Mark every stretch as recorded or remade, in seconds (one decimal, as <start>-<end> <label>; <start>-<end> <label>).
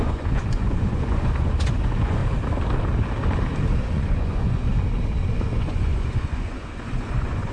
0.0-2.2 remade; 2.2-3.9 recorded; 3.9-4.7 remade; 4.7-5.3 recorded; 5.3-7.5 remade